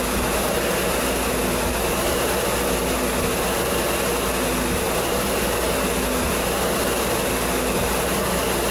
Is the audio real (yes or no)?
yes